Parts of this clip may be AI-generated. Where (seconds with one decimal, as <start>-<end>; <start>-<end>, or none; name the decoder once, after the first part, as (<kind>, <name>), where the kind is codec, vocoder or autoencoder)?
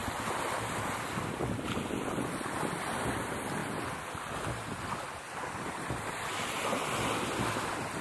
none